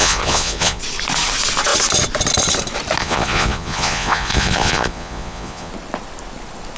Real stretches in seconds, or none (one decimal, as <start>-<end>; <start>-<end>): 0.8-3.0; 5.7-6.8